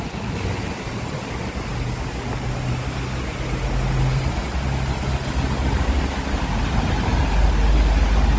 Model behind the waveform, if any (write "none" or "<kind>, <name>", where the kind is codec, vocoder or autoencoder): none